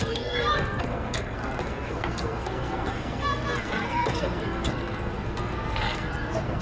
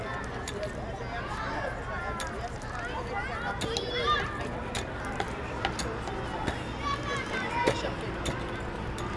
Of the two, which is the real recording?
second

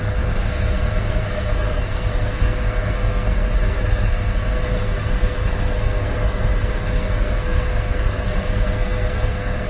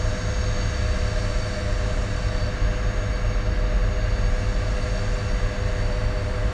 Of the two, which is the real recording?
second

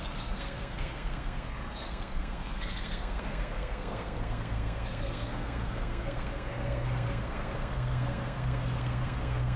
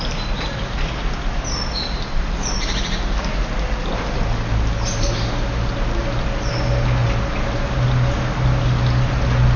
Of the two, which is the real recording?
second